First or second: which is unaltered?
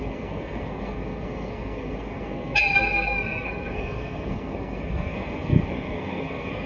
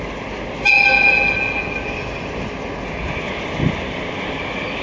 second